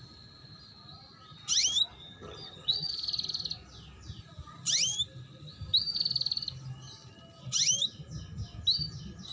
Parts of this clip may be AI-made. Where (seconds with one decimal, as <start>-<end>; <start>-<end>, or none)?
2.0-2.9